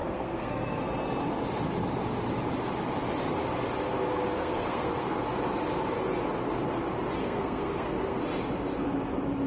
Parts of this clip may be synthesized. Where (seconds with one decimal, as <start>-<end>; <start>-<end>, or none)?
0.0-0.8; 4.4-5.2; 7.2-8.2